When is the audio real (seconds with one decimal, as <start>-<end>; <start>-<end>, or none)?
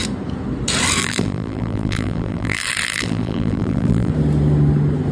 0.0-1.0; 4.1-5.1